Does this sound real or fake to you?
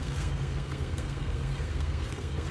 fake